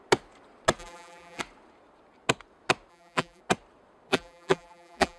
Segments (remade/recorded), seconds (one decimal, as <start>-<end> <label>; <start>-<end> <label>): 0.0-0.8 recorded; 0.8-1.4 remade; 1.4-2.9 recorded; 2.9-3.4 remade; 3.4-4.1 recorded; 4.1-5.2 remade